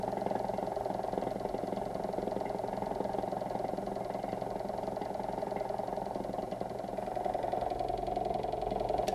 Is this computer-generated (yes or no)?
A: no